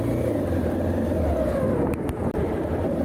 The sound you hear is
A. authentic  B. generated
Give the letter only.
A